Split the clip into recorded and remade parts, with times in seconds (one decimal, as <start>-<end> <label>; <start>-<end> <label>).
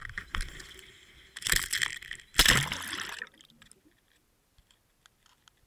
0.0-5.7 recorded